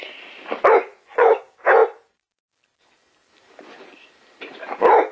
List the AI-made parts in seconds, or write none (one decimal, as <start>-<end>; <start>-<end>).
0.9-1.4

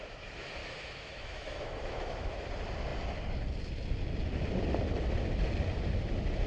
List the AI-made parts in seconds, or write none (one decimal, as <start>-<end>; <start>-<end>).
0.6-2.5

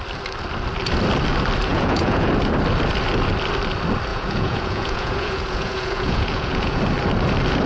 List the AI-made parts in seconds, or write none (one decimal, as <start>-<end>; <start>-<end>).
1.7-2.3; 4.1-6.8

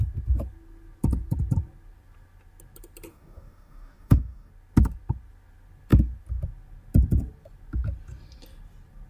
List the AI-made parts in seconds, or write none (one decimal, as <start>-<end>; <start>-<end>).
3.1-4.5